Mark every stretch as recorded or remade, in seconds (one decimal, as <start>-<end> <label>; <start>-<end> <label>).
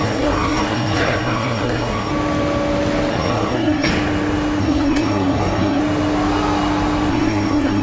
0.0-2.1 remade; 2.1-3.1 recorded; 3.1-3.9 remade; 3.9-4.6 recorded; 4.6-5.8 remade; 5.8-7.1 recorded; 7.1-7.8 remade